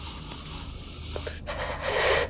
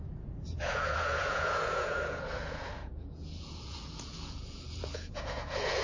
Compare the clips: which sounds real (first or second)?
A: first